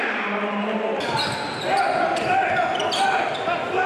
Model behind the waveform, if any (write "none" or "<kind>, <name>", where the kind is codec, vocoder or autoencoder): none